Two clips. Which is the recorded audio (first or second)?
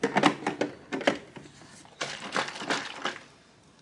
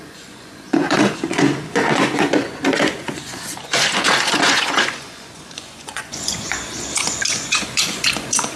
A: first